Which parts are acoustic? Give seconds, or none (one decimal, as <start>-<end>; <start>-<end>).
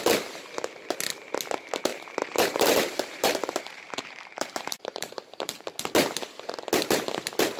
0.0-1.9; 5.6-7.6